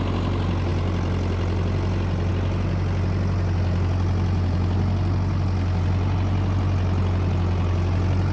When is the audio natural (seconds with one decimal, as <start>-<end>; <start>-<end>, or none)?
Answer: 0.0-8.3